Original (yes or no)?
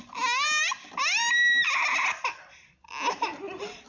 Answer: yes